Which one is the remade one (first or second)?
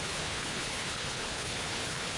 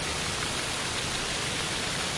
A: first